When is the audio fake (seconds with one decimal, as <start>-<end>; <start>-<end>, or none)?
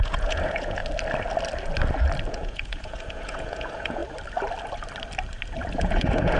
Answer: 0.0-0.8; 2.3-4.0; 5.7-6.4